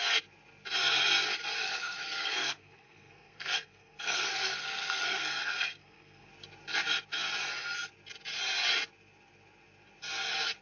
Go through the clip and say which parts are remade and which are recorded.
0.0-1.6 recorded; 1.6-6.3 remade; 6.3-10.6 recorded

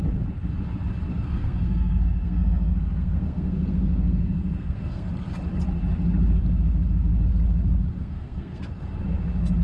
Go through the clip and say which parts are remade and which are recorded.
0.0-1.1 recorded; 1.1-5.1 remade; 5.1-8.0 recorded; 8.0-8.6 remade; 8.6-9.6 recorded

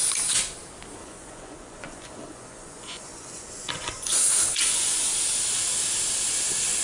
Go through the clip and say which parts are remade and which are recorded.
0.0-1.0 recorded; 1.0-5.1 remade; 5.1-6.8 recorded

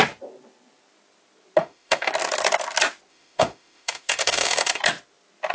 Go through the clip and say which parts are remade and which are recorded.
0.0-1.6 recorded; 1.6-2.1 remade; 2.1-3.1 recorded; 3.1-4.8 remade; 4.8-5.5 recorded

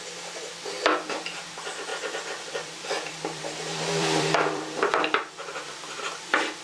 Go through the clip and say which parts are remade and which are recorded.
0.0-1.9 recorded; 1.9-5.3 remade; 5.3-6.6 recorded

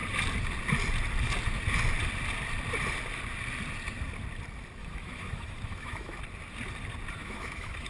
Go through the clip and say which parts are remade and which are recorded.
0.0-4.8 recorded; 4.8-6.2 remade; 6.2-7.2 recorded; 7.2-7.9 remade